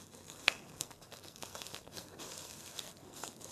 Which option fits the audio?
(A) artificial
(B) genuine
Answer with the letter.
A